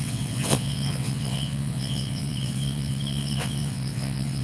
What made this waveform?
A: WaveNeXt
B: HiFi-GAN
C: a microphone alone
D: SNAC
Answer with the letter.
A